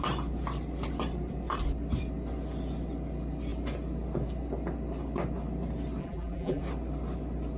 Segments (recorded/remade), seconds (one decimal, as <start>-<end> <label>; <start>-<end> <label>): 0.0-6.0 recorded; 6.0-6.6 remade; 6.6-7.6 recorded